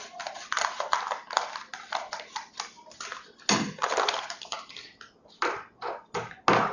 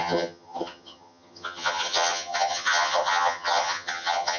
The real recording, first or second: first